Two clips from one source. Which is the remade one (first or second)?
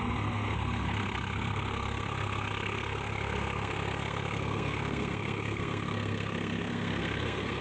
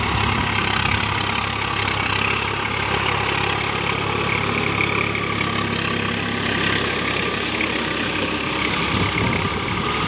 first